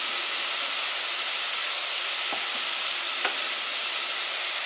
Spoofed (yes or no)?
no